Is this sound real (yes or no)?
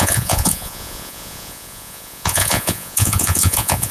no